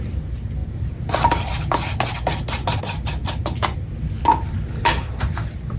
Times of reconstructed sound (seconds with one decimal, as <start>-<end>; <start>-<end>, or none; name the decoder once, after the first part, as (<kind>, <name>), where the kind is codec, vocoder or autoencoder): none